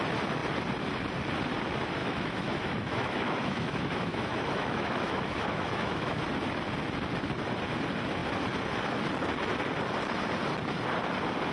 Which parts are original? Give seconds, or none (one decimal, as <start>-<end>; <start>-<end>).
0.0-2.0; 6.2-11.5